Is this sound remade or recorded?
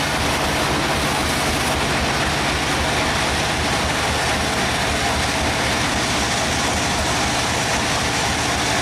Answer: recorded